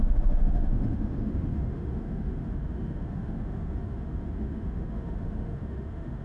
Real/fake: fake